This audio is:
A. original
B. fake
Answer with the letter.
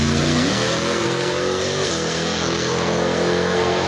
B